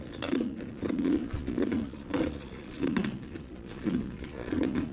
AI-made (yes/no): yes